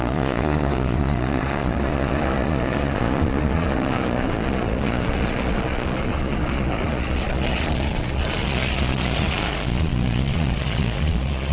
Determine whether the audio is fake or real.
fake